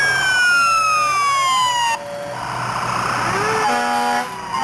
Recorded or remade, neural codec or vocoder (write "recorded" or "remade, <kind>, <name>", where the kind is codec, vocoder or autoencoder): recorded